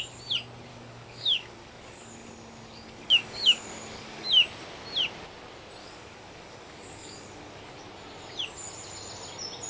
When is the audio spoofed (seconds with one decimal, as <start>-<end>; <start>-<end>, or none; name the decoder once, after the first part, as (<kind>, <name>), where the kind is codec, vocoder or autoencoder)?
0.7-4.3 (codec, DAC); 5.8-7.6